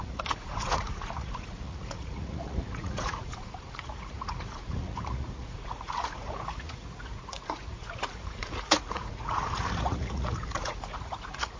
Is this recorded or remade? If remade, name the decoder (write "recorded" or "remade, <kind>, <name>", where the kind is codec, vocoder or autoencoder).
remade, vocoder, Vocos